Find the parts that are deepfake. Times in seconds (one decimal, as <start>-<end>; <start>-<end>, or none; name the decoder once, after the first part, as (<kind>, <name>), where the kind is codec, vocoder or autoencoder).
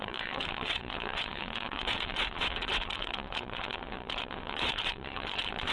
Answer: 0.0-5.7 (vocoder, WaveNeXt)